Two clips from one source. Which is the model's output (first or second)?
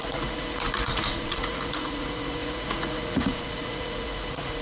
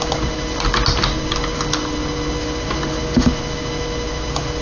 first